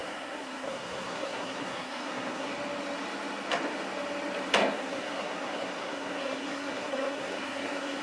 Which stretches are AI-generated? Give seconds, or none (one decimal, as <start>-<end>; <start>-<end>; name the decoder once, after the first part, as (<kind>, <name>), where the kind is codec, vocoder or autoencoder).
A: 0.0-2.5 (codec, SNAC); 4.6-8.0